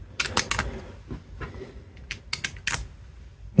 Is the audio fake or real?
real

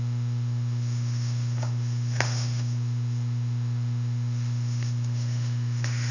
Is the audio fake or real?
fake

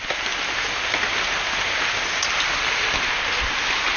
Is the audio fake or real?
real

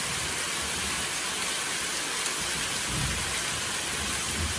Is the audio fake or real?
real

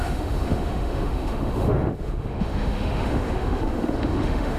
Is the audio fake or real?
fake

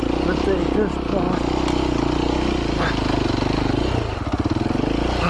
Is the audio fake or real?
real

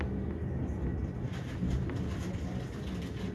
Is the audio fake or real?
real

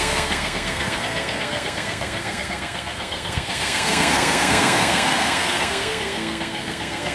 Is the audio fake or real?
fake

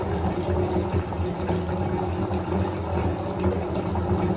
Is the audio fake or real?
real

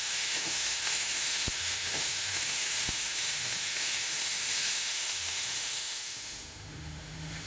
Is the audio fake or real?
fake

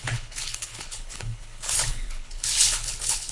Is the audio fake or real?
fake